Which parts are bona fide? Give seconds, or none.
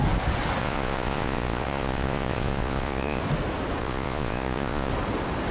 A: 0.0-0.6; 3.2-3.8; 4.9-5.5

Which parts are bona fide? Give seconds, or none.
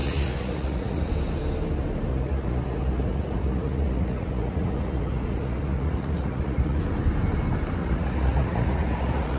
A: 1.1-2.1; 6.8-7.8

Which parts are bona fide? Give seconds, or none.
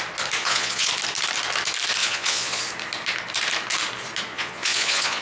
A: 0.0-0.4; 0.9-2.0; 2.6-4.3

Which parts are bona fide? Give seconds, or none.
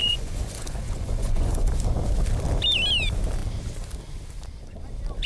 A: 1.7-5.3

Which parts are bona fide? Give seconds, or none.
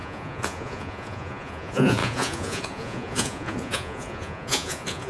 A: none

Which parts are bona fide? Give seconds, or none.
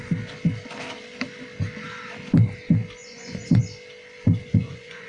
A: 0.0-3.0; 3.6-4.5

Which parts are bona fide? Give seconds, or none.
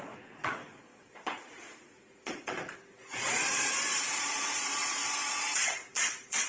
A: none